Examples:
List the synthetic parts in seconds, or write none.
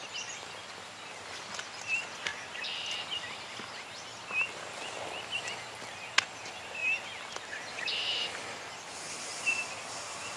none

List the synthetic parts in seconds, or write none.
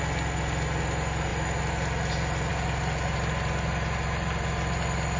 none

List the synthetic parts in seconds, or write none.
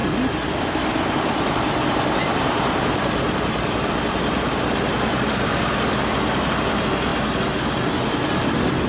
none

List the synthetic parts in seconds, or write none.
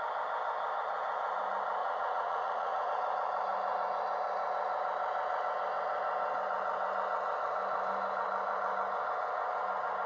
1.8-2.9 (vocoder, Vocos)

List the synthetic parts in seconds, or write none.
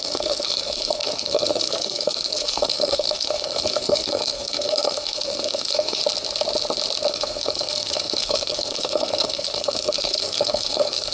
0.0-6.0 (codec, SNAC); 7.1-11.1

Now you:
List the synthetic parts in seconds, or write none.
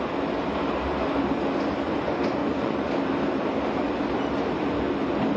2.4-2.9 (vocoder, Vocos)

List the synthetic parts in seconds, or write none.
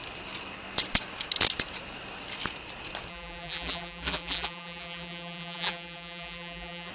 3.1-6.9 (vocoder, BigVGAN v2)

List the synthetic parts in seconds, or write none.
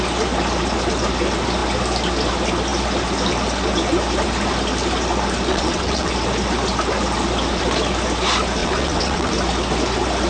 5.5-6.1 (vocoder, WaveNeXt); 8.6-9.3